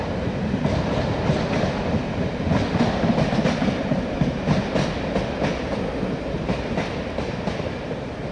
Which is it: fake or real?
real